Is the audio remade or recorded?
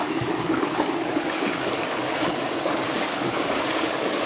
remade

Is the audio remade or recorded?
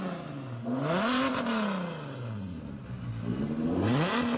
recorded